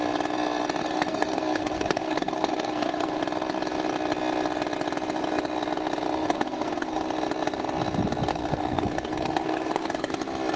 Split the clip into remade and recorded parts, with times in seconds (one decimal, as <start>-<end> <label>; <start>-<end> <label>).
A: 0.0-0.8 recorded; 0.8-3.2 remade; 3.2-6.2 recorded; 6.2-7.0 remade; 7.0-8.3 recorded; 8.3-10.1 remade; 10.1-10.6 recorded